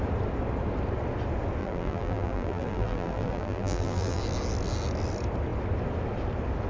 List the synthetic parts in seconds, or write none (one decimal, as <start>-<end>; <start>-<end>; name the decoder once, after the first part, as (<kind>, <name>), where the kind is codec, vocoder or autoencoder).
1.6-4.2 (vocoder, BigVGAN v2)